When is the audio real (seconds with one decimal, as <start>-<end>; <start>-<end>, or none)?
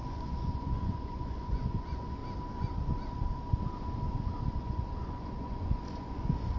2.2-4.6